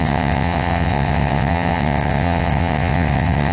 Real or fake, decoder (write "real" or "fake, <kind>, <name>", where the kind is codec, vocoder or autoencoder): fake, vocoder, WaveNeXt